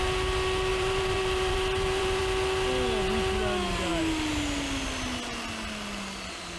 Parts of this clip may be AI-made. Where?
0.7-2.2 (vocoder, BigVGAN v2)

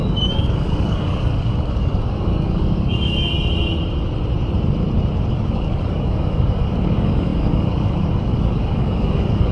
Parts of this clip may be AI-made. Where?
0.0-3.3 (codec, DAC); 5.3-9.5